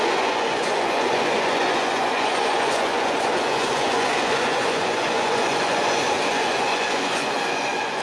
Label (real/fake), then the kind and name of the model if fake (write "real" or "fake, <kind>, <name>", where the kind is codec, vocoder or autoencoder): fake, vocoder, Vocos